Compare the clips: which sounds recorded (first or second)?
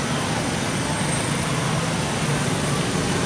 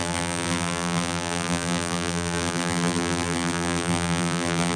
first